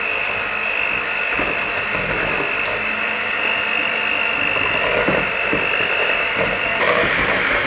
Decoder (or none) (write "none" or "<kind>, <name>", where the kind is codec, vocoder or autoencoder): vocoder, BigVGAN v2